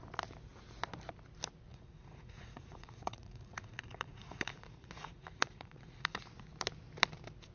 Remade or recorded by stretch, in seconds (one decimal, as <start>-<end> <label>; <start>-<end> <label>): 0.0-1.7 recorded; 1.7-6.2 remade; 6.2-7.5 recorded